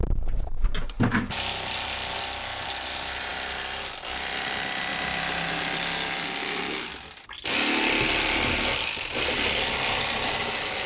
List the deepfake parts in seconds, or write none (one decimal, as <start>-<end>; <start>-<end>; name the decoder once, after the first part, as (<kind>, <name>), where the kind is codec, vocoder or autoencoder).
none